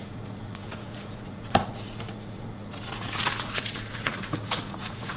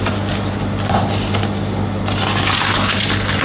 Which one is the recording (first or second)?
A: second